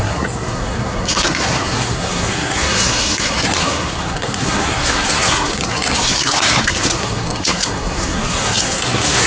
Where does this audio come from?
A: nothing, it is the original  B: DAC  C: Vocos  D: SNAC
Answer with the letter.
D